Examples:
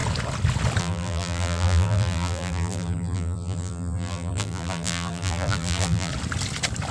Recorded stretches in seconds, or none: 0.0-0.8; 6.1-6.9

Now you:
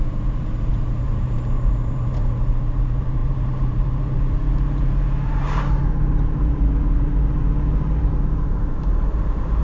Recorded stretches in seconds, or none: none

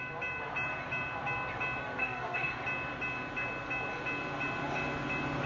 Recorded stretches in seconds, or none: 0.0-1.8; 2.6-5.5

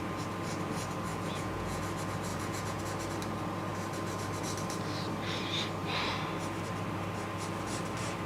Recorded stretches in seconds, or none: 0.0-1.1; 1.8-2.3; 2.8-8.3

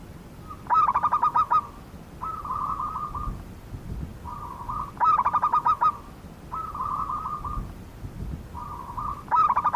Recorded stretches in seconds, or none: none

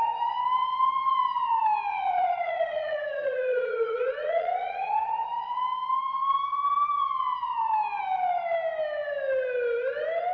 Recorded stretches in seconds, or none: 0.0-1.9; 5.6-10.3